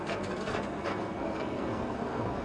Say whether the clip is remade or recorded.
remade